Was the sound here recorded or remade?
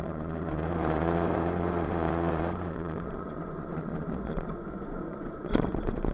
remade